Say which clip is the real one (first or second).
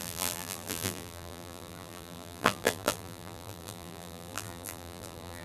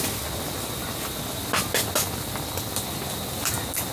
second